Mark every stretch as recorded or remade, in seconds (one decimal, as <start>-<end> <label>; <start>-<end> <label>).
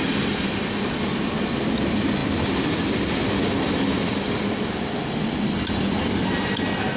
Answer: 0.0-7.0 recorded